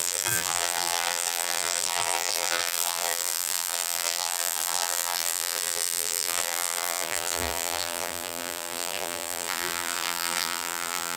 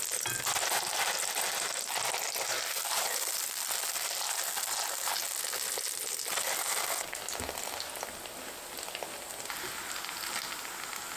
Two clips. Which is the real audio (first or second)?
second